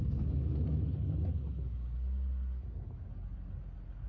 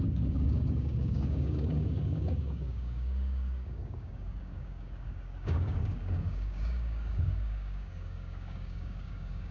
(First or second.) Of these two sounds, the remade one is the second